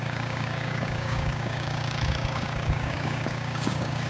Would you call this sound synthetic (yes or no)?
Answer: yes